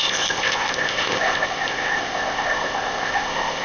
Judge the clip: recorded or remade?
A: remade